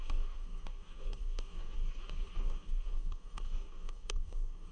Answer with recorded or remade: remade